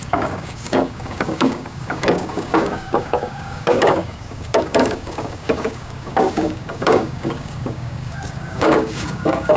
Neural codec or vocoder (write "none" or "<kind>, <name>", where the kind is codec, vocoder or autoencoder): codec, DAC